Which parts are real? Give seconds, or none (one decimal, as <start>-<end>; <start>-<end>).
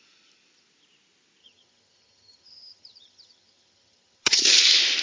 0.0-1.4; 4.4-5.0